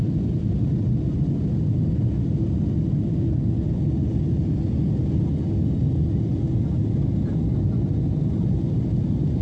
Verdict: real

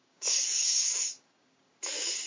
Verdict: fake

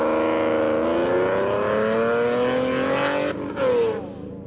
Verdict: real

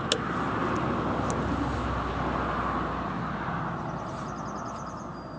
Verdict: real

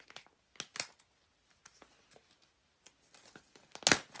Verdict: real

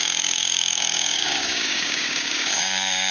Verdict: fake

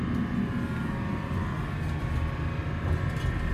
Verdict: real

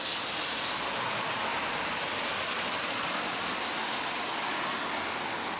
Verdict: real